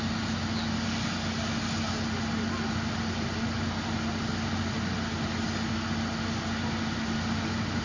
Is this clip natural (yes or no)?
yes